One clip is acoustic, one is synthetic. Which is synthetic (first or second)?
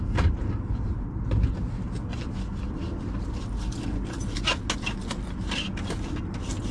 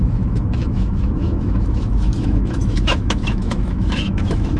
second